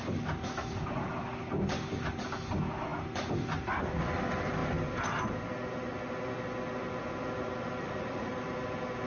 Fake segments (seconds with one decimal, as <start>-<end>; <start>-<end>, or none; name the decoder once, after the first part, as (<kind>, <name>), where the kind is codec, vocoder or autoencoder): 7.8-8.3 (vocoder, Vocos)

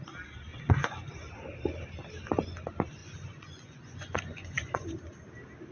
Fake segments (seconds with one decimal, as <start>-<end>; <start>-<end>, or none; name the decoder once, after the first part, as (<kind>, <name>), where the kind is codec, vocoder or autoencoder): 0.5-1.3 (vocoder, Vocos); 3.0-4.9

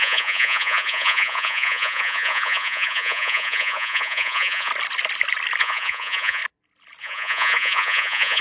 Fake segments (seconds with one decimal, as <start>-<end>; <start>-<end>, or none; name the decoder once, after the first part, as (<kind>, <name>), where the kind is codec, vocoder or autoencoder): 0.0-4.7 (vocoder, Vocos); 5.6-6.4; 7.0-8.4

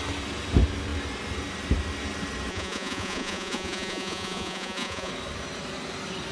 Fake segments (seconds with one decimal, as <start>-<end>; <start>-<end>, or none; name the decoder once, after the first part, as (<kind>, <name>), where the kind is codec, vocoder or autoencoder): 2.5-5.1 (vocoder, Vocos)

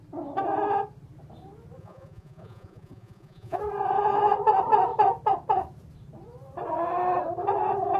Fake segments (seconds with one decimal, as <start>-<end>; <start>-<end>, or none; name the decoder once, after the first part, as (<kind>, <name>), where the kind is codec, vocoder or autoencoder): 1.8-3.6 (vocoder, Vocos)